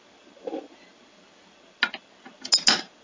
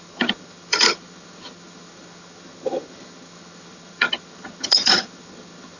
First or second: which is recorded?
first